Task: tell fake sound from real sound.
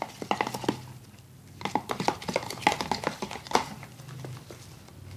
real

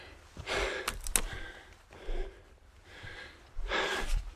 real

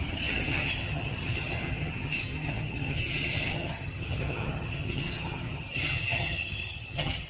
fake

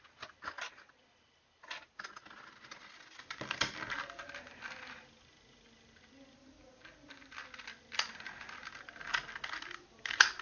real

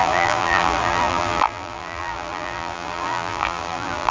fake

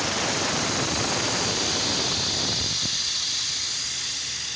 real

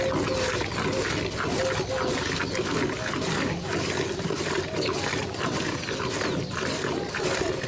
real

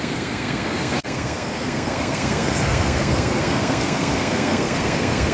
fake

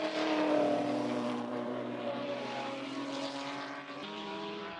fake